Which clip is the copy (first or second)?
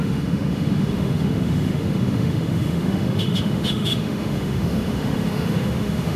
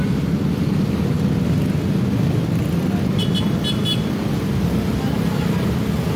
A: first